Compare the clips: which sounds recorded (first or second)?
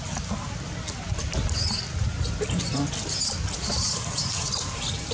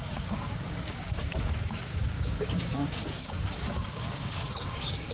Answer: first